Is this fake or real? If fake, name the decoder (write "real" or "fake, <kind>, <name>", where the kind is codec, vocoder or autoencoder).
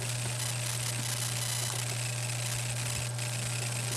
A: real